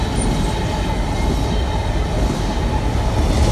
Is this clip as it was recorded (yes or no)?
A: yes